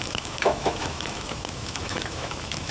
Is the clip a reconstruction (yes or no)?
yes